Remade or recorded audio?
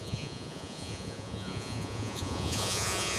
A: remade